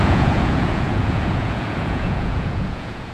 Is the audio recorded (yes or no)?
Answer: no